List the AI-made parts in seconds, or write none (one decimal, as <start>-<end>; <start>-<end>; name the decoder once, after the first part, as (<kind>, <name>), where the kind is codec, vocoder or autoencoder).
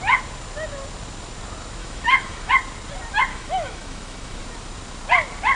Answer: 1.8-2.5 (autoencoder, DAC-VAE); 3.3-4.4